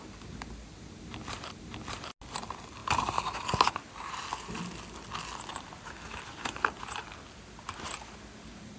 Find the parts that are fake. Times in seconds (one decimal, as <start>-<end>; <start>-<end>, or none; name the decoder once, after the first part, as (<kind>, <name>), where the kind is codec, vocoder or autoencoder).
none